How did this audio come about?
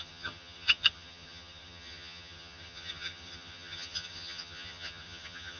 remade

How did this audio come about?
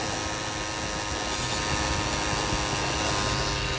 recorded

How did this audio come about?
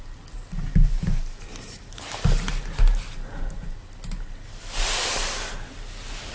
recorded